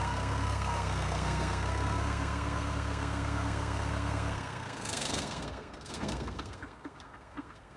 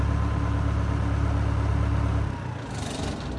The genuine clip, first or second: second